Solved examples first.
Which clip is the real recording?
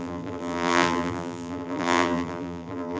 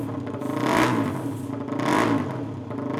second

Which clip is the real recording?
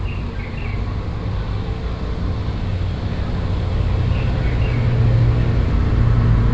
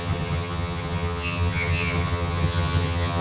first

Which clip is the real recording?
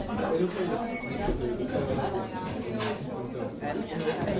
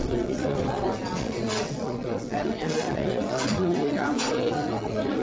first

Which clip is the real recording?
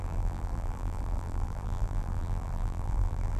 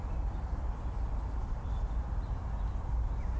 second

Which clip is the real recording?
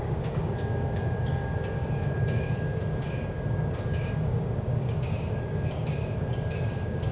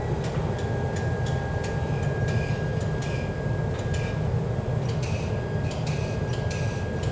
second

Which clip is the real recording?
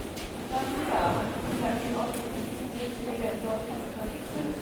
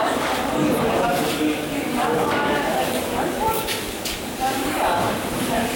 first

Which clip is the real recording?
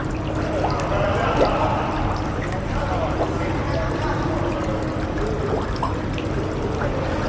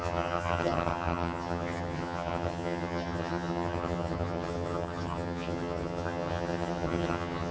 first